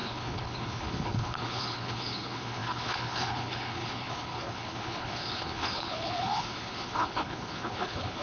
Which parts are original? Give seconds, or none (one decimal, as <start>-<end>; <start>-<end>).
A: none